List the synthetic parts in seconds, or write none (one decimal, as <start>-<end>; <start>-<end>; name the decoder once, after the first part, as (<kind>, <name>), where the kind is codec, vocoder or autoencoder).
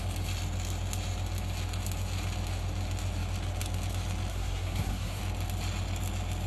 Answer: 4.3-5.2 (codec, SNAC)